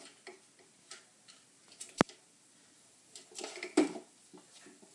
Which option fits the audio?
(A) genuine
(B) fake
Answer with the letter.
A